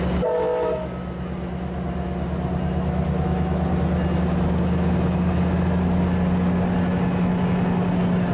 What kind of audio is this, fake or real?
real